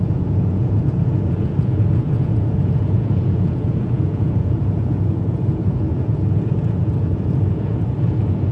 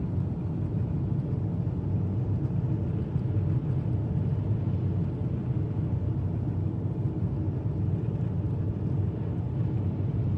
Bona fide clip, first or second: second